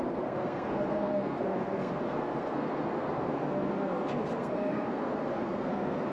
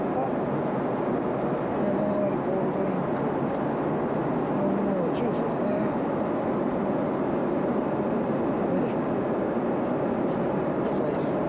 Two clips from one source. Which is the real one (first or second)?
second